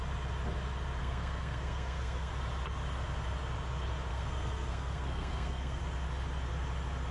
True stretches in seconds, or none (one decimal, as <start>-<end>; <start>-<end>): 0.0-1.0; 2.3-4.1; 5.8-7.1